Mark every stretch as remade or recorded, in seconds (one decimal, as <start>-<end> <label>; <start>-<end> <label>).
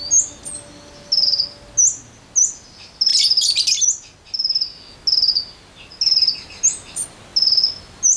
0.0-8.2 recorded